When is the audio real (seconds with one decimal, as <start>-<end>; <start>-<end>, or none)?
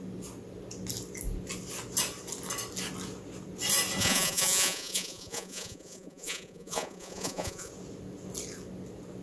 0.0-4.0; 7.7-9.2